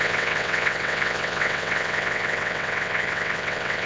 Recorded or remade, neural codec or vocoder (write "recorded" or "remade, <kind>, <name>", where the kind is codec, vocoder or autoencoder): remade, vocoder, WaveNeXt